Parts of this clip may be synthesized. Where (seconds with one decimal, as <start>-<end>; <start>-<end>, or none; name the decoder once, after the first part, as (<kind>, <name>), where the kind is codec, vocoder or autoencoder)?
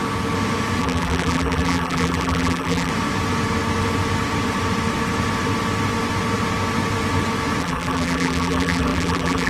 0.8-2.9 (vocoder, BigVGAN v2); 7.6-9.5